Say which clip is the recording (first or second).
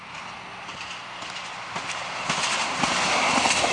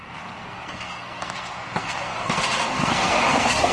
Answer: first